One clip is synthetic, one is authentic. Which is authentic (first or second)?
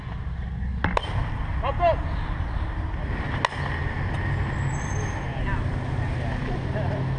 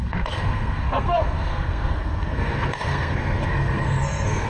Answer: first